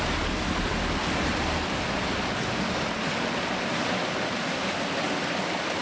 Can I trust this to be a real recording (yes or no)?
yes